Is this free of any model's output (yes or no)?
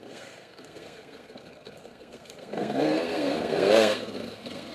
no